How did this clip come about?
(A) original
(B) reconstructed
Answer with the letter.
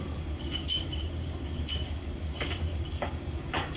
B